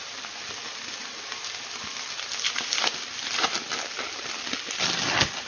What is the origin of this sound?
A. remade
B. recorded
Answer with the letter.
B